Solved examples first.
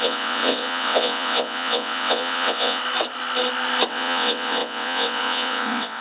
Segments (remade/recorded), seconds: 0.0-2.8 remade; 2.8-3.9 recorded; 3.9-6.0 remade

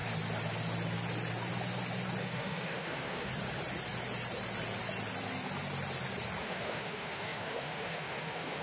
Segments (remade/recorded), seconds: 0.0-2.2 recorded; 2.2-3.3 remade; 3.3-6.4 recorded; 6.4-8.6 remade

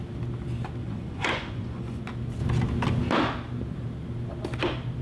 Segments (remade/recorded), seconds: 0.0-0.8 recorded; 0.8-2.0 remade; 2.0-5.0 recorded

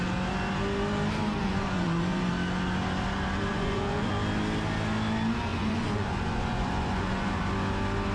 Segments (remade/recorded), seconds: 0.0-1.4 recorded; 1.4-2.3 remade; 2.3-3.5 recorded; 3.5-4.1 remade; 4.1-5.5 recorded; 5.5-7.4 remade; 7.4-8.1 recorded

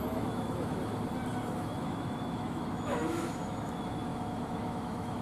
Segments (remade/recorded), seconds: 0.0-0.9 remade; 0.9-1.5 recorded; 1.5-5.2 remade

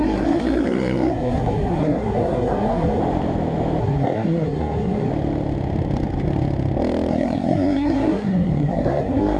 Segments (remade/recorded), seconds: 0.0-3.0 remade; 3.0-3.8 recorded; 3.8-5.1 remade; 5.1-7.1 recorded; 7.1-9.4 remade

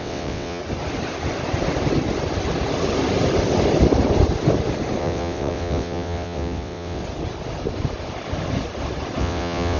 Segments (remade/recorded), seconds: 0.0-0.6 remade; 0.6-5.0 recorded; 5.0-7.0 remade; 7.0-9.2 recorded; 9.2-9.8 remade

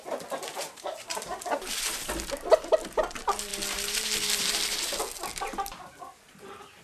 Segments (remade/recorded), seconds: 0.0-6.8 recorded